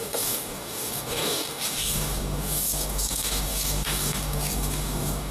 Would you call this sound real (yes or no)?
no